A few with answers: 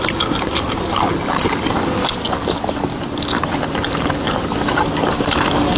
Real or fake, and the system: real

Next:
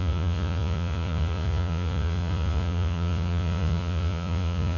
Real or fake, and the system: fake, vocoder, Vocos